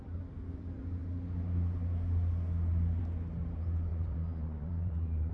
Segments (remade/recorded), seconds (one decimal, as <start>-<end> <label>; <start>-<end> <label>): 0.0-3.9 recorded; 3.9-5.3 remade